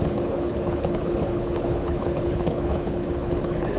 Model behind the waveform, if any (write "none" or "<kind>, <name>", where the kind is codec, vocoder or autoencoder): codec, HILCodec